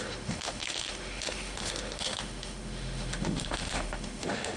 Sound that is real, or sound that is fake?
fake